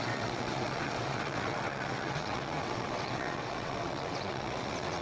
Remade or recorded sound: remade